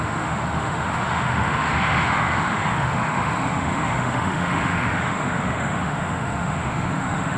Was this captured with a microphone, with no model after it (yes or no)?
no